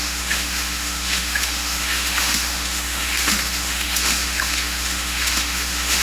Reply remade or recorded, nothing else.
remade